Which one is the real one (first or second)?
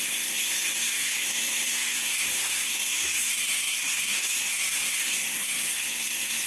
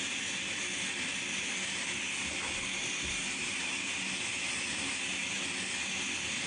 second